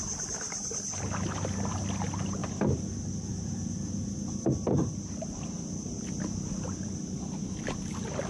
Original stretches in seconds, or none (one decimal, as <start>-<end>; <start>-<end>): 0.0-8.3